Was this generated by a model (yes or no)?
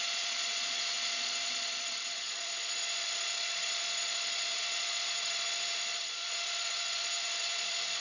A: yes